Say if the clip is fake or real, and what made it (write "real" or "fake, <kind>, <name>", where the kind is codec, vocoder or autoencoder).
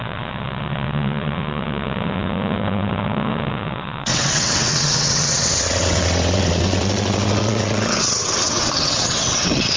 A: fake, vocoder, WaveNeXt